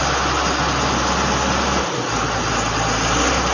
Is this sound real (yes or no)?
yes